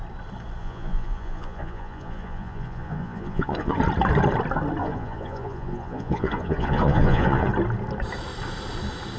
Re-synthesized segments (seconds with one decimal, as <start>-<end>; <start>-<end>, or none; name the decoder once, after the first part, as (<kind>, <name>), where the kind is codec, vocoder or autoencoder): 0.6-3.8 (vocoder, Vocos); 4.8-7.5